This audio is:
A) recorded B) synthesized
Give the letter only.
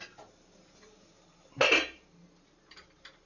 A